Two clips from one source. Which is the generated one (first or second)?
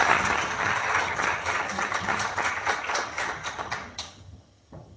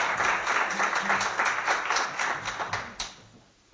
first